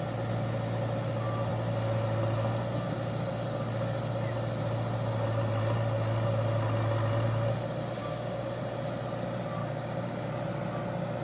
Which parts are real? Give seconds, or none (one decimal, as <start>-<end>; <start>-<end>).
0.0-8.0; 8.6-9.6; 10.3-11.2